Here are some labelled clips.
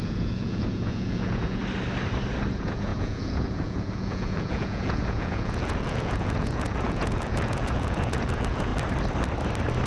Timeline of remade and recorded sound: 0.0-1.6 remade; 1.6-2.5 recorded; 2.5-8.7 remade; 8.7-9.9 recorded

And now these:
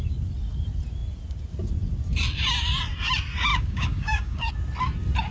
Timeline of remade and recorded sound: 0.0-3.5 recorded; 3.5-4.5 remade; 4.5-5.3 recorded

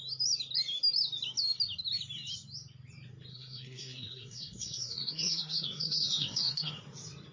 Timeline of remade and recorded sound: 0.0-3.3 recorded; 3.3-6.7 remade; 6.7-7.3 recorded

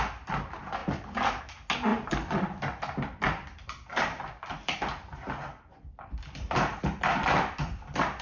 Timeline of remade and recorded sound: 0.0-0.8 recorded; 0.8-1.4 remade; 1.4-1.9 recorded; 1.9-6.8 remade; 6.8-8.2 recorded

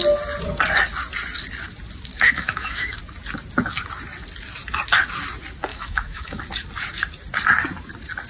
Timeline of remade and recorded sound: 0.0-2.1 recorded; 2.1-3.0 remade; 3.0-5.7 recorded; 5.7-6.4 remade; 6.4-8.3 recorded

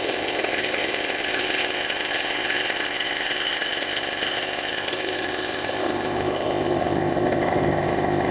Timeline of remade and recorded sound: 0.0-8.3 remade